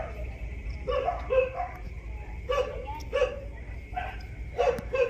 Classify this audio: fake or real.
fake